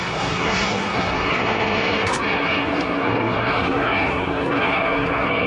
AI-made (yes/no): yes